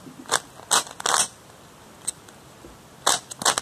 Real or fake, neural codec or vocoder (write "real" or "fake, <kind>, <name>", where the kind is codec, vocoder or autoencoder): real